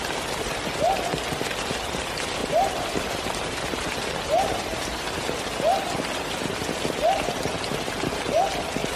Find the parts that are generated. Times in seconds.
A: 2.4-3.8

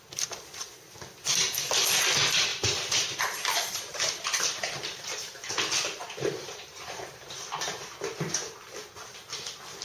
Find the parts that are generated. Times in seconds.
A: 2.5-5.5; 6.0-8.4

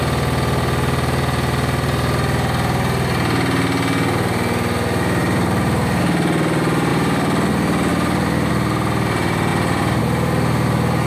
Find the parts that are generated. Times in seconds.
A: 5.2-6.0; 7.9-8.5

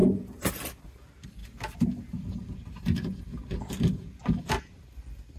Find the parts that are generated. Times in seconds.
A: 0.0-0.5

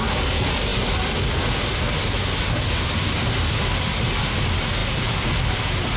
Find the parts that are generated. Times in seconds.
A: 4.8-5.6

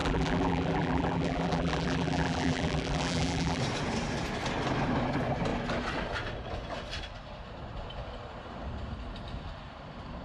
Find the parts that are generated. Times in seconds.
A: 0.0-3.6

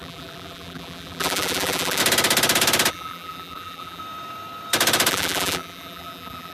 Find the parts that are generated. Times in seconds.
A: 0.0-2.0; 2.9-4.0; 5.1-6.5